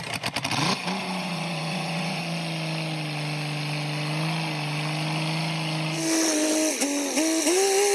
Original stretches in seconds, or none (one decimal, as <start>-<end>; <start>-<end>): 0.0-1.0; 2.2-7.9

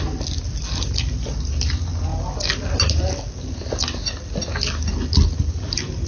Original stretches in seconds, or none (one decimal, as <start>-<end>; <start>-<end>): 0.0-6.1

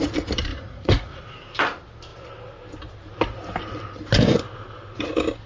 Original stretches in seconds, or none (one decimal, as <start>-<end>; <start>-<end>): 0.0-0.5; 1.2-5.5

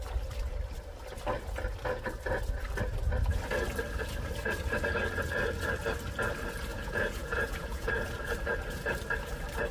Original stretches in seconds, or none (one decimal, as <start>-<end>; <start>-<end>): 0.0-6.7; 7.9-9.7